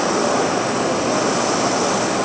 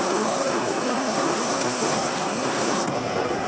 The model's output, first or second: second